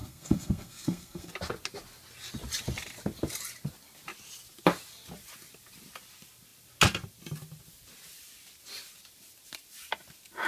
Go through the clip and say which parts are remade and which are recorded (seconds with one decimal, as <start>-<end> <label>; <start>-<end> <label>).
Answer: 0.0-1.3 remade; 1.3-10.5 recorded